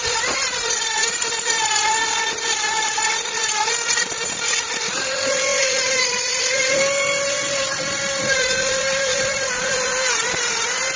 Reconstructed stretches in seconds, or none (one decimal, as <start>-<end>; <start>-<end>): 0.0-1.0; 2.9-5.5; 9.1-11.0

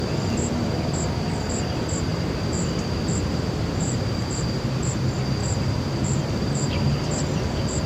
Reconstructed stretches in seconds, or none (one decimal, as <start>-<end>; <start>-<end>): 2.1-4.8; 5.4-7.0

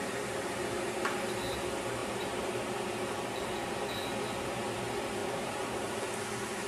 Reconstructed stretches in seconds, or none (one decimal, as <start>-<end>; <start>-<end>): 2.0-3.5; 5.2-5.9

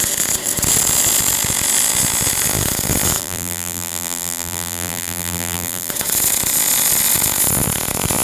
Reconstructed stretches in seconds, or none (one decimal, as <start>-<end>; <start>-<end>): 3.2-5.9

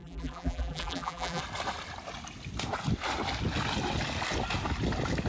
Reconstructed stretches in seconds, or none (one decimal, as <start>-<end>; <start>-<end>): 0.0-1.4

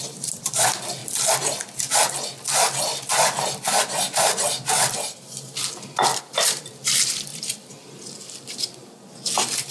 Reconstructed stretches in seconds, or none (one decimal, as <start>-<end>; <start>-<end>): 0.0-1.0; 6.2-9.7

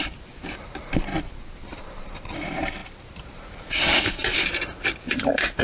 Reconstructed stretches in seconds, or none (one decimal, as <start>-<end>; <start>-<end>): 0.0-1.1; 1.8-5.6

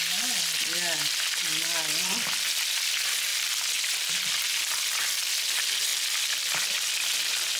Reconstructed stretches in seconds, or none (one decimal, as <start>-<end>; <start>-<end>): 3.3-4.4